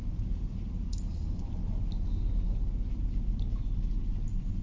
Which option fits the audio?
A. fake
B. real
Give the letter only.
B